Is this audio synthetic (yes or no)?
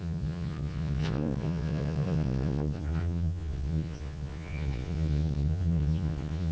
yes